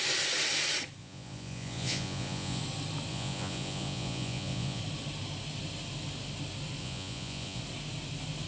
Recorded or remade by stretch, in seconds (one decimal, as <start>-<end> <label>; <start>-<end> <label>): 0.0-1.0 recorded; 1.0-2.6 remade; 2.6-3.1 recorded; 3.1-4.8 remade; 4.8-6.8 recorded; 6.8-7.6 remade; 7.6-8.5 recorded